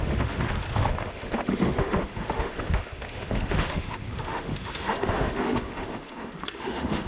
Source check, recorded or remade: remade